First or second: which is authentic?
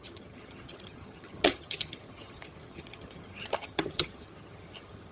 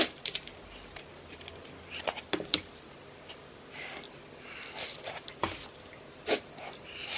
second